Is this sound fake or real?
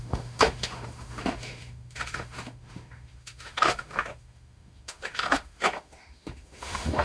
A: fake